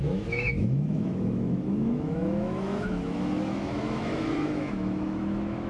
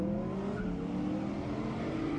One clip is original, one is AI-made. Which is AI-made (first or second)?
first